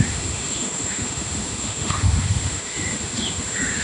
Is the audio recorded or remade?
remade